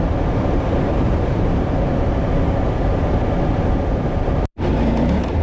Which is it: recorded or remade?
remade